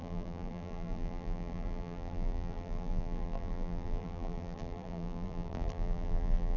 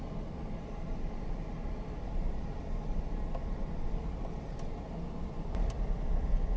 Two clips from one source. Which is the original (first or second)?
second